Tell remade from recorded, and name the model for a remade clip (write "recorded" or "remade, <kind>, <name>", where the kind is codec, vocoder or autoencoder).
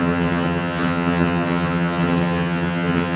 remade, vocoder, HiFi-GAN